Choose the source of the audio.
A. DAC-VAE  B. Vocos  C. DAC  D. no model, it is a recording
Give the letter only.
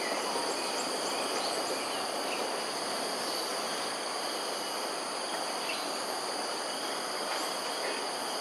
D